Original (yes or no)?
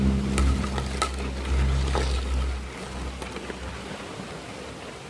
yes